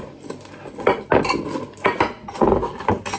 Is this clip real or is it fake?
real